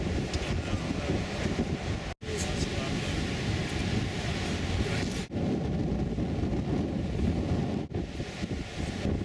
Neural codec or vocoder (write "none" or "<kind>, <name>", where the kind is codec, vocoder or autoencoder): none